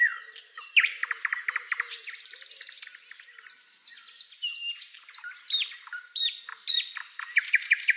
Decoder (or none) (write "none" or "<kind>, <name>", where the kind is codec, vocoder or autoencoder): none